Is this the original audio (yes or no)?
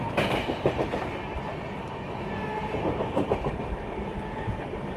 no